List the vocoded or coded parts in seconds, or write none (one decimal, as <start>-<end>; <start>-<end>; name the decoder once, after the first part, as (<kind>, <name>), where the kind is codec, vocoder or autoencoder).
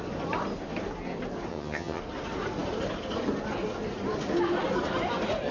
1.5-2.0 (vocoder, HiFi-GAN)